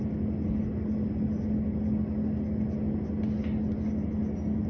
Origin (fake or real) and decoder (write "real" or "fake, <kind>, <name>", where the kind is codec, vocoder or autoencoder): real